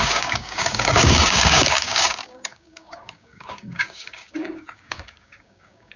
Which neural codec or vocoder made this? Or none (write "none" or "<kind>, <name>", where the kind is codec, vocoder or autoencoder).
codec, DAC